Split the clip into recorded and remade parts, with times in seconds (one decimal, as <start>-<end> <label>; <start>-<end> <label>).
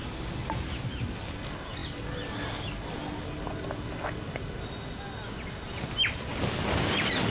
0.0-7.3 recorded